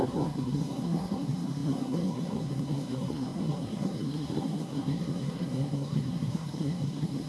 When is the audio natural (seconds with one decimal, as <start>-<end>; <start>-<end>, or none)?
none